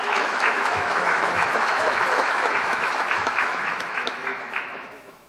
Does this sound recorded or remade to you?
remade